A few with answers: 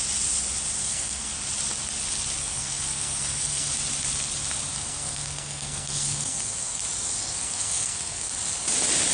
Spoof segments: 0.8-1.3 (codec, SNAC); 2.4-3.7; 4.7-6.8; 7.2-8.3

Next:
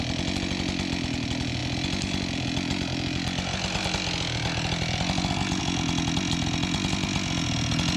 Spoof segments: none